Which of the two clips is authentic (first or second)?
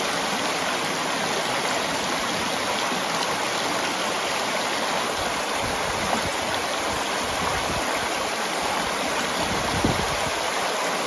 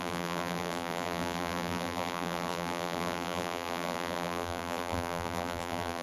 first